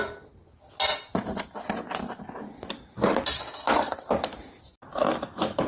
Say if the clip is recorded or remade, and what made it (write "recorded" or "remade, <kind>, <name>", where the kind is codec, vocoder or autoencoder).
recorded